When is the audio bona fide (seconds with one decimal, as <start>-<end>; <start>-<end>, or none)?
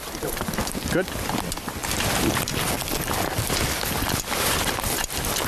0.0-5.5